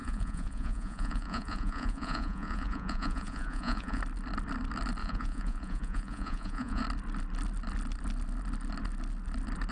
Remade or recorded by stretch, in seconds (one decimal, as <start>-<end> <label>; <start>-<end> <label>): 0.0-4.0 remade; 4.0-5.0 recorded; 5.0-6.8 remade; 6.8-9.7 recorded